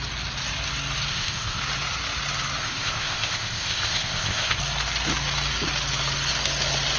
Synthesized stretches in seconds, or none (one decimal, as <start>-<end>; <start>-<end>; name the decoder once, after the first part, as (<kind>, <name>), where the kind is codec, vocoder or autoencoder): 1.1-1.6 (codec, ZipCodec); 2.6-4.6